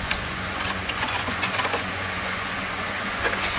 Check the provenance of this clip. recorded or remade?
remade